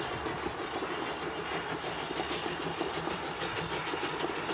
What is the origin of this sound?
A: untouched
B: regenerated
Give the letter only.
A